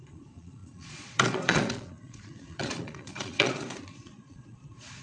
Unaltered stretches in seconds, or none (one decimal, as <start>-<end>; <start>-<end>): none